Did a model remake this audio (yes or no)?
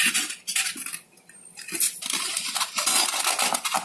no